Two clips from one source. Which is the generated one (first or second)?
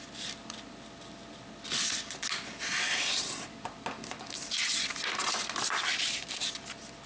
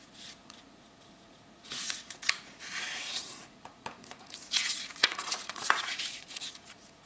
second